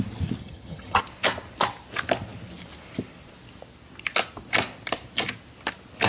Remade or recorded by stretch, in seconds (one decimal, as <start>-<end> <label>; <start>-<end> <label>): 0.0-0.4 recorded; 0.4-1.0 remade; 1.0-6.1 recorded